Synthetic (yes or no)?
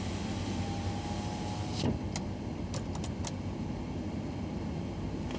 no